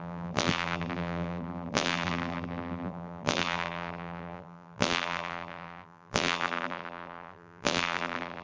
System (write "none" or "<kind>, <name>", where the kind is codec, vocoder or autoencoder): vocoder, BigVGAN v2